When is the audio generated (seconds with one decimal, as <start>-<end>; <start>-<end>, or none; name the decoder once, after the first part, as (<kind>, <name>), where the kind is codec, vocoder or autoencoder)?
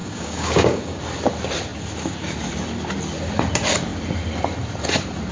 0.0-1.0 (codec, DAC)